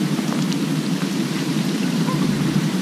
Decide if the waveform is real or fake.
fake